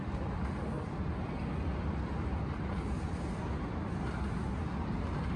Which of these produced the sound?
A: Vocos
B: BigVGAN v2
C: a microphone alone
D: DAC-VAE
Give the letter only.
C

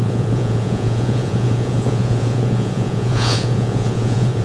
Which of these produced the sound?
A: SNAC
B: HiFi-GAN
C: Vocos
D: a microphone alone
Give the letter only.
C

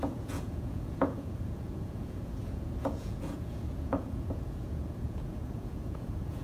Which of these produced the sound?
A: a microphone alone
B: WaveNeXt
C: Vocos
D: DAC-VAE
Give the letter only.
C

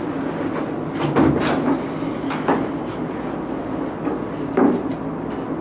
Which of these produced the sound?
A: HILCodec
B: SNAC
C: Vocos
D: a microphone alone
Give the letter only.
D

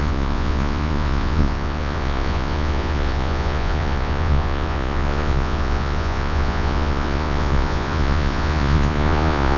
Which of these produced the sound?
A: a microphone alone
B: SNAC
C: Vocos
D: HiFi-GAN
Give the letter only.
C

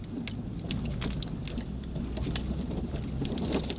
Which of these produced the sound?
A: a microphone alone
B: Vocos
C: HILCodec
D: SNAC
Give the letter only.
A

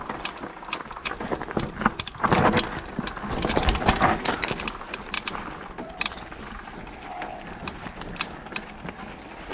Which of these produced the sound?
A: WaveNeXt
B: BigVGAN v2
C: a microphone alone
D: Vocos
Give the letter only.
C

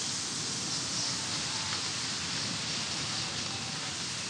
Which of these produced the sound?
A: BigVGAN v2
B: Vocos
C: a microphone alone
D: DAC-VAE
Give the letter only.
C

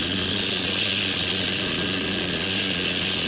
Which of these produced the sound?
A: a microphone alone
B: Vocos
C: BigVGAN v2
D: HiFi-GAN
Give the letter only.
B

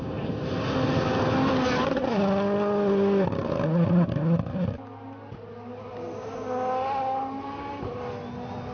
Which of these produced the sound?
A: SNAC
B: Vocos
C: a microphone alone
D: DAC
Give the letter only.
C